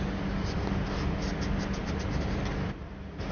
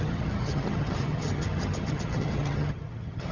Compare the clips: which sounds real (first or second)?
first